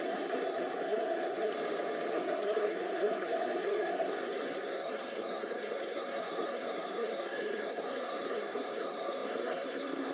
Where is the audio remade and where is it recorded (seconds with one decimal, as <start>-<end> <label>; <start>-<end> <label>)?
0.0-1.5 remade; 1.5-2.1 recorded; 2.1-10.1 remade